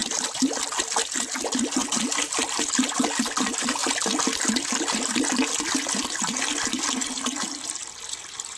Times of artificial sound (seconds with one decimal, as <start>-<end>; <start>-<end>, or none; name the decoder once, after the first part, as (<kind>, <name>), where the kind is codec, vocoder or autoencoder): none